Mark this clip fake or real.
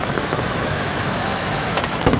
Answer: fake